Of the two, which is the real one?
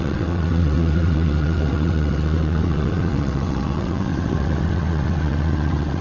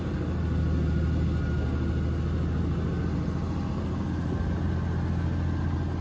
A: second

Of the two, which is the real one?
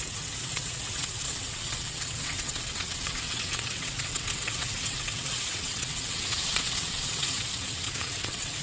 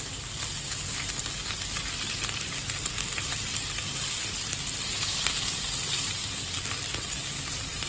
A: second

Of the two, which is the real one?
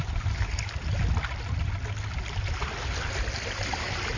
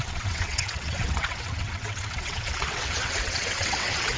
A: first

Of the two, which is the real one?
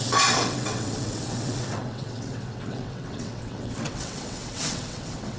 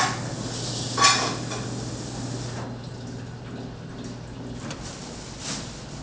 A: second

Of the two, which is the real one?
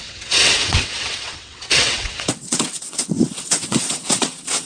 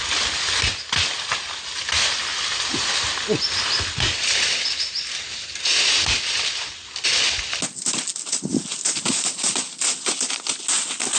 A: second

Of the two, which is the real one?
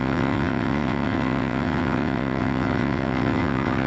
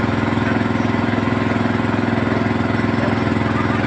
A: second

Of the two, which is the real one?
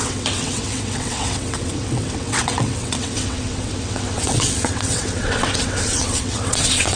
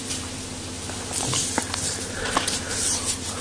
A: second